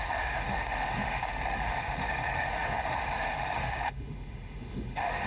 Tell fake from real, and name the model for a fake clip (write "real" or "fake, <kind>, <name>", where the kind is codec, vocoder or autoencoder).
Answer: fake, autoencoder, DAC-VAE